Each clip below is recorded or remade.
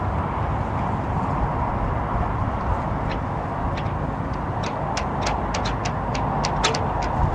recorded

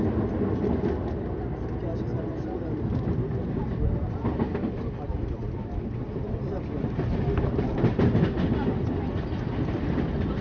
recorded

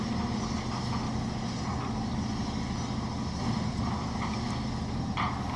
recorded